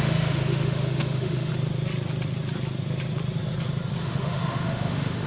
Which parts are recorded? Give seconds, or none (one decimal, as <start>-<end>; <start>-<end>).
1.5-4.0